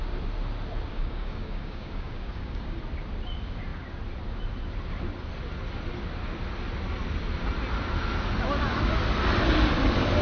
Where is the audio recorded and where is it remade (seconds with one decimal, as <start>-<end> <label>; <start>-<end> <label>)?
0.0-0.9 recorded; 0.9-2.8 remade; 2.8-10.2 recorded